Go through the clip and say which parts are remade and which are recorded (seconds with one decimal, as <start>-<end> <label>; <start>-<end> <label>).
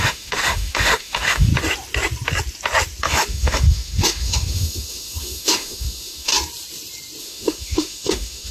0.0-1.5 remade; 1.5-3.0 recorded; 3.0-6.3 remade; 6.3-7.2 recorded; 7.2-8.5 remade